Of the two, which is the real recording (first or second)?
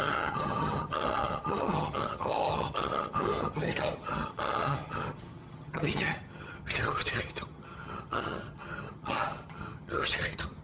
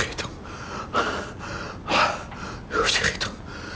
second